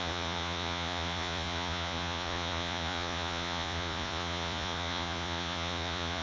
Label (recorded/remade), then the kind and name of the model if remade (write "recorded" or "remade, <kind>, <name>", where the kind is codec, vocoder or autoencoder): remade, vocoder, Vocos